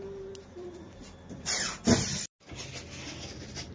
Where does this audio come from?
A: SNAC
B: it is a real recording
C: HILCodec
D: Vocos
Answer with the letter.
B